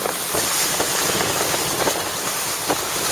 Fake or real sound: real